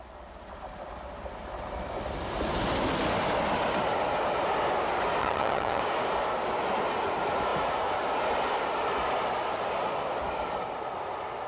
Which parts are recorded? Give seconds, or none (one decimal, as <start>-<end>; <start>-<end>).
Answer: 0.0-5.2; 5.8-11.5